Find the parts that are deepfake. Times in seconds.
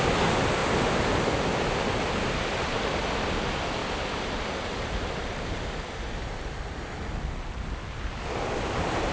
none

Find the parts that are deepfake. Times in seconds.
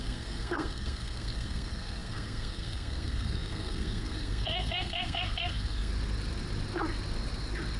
0.0-5.9 (codec, SNAC)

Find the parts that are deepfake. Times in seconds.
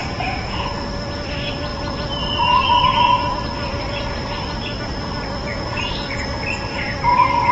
0.0-0.7 (vocoder, Vocos); 5.5-6.1